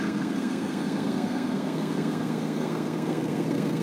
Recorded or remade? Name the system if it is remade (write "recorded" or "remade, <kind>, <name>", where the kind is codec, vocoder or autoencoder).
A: remade, codec, SNAC